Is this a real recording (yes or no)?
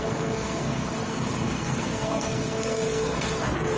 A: no